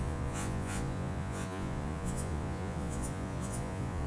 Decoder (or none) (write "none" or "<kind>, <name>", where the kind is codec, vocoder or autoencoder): vocoder, Vocos